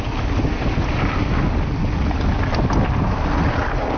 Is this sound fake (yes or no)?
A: no